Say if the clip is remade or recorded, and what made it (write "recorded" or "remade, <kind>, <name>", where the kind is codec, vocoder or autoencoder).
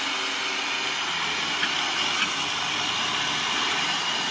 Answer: recorded